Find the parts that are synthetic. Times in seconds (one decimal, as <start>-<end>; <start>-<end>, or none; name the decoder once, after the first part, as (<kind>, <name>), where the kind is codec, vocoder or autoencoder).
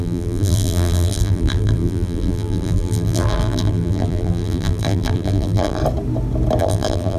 0.0-5.8 (vocoder, BigVGAN v2); 6.6-7.2